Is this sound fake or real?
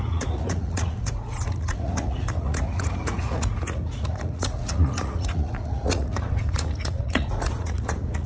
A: fake